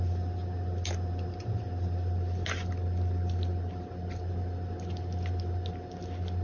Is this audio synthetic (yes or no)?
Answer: no